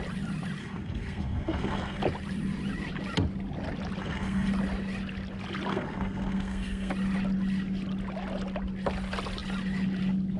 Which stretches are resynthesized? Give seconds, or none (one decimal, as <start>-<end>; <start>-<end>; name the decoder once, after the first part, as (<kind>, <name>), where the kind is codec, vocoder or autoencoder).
0.6-2.0 (codec, SNAC); 4.0-4.5; 5.7-6.9

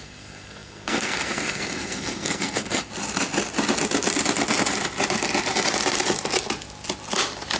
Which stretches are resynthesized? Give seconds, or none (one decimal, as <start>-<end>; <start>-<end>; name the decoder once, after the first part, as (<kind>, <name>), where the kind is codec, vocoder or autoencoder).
0.0-2.9 (codec, SNAC)